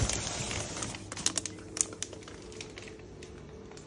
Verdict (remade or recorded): recorded